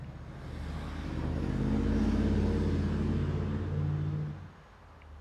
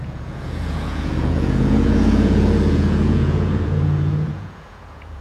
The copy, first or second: second